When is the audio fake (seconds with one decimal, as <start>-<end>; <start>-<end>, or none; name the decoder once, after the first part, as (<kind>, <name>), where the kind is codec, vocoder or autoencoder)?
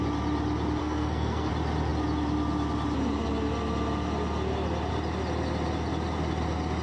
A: 0.8-1.5 (codec, SNAC)